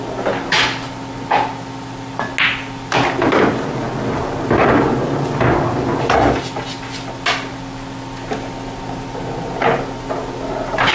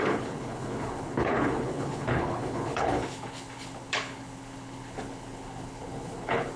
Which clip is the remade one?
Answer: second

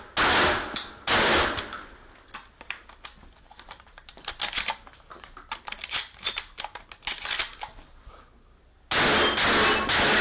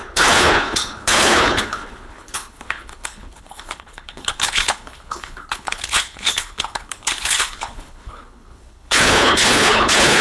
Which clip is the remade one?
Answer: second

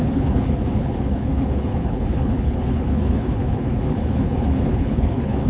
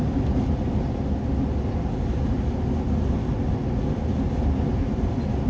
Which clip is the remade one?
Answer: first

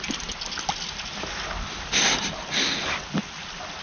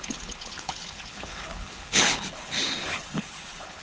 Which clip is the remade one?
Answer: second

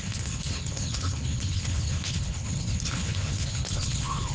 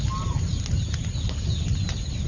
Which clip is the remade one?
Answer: first